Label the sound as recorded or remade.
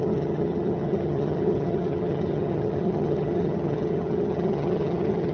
remade